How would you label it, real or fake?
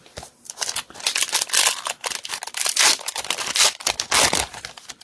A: real